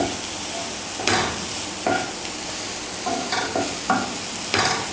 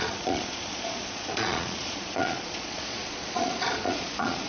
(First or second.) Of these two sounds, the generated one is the second